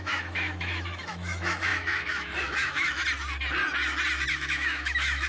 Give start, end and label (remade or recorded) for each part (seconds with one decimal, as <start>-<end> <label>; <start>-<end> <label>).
0.0-3.0 remade; 3.0-4.3 recorded; 4.3-5.3 remade